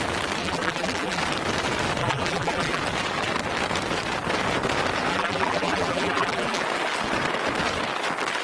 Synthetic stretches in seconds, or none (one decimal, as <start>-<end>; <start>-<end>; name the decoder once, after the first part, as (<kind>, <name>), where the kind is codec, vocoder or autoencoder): 0.4-1.2 (vocoder, BigVGAN v2); 2.0-2.8; 5.1-6.6